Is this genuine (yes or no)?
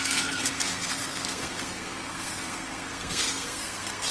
no